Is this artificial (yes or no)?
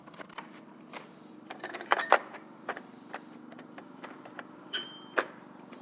yes